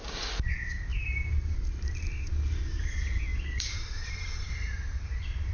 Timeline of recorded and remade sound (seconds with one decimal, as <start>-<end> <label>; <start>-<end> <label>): 0.0-0.9 recorded; 0.9-2.3 remade; 2.3-3.3 recorded; 3.3-4.1 remade; 4.1-5.5 recorded